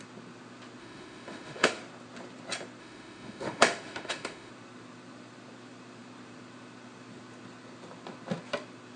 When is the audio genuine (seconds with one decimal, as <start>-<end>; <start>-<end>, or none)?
0.0-0.8; 1.8-2.8; 4.5-9.0